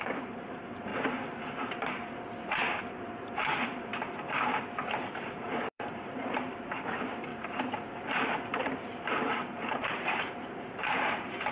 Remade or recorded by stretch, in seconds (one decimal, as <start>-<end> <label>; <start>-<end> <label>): 0.0-0.9 remade; 0.9-2.8 recorded; 2.8-3.9 remade; 3.9-5.6 recorded; 5.6-7.3 remade; 7.3-8.6 recorded; 8.6-11.5 remade